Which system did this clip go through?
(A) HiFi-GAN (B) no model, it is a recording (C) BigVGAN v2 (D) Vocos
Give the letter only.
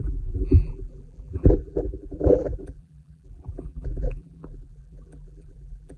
C